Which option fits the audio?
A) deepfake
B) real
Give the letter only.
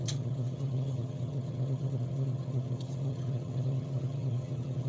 A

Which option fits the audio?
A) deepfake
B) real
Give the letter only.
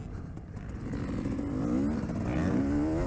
B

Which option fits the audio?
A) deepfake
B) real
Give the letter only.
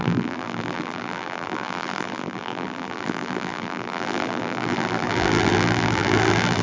A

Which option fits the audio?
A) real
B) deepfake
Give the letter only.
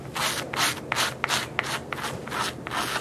A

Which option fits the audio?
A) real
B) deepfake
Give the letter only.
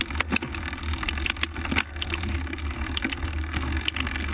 A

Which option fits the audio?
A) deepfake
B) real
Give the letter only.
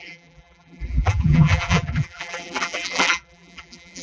A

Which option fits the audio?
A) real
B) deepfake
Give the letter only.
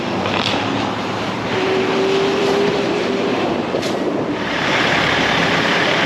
B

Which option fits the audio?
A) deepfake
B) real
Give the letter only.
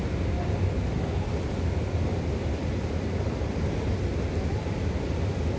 B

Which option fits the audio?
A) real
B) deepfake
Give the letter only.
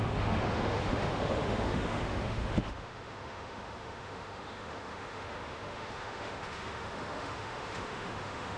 B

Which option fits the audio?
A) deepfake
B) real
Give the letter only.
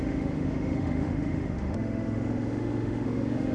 A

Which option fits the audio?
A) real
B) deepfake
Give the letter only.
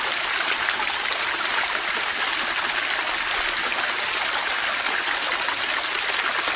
A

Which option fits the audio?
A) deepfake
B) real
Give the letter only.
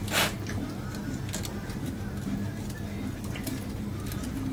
B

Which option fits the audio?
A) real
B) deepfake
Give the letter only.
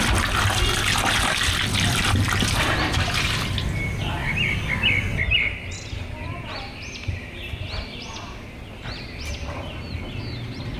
A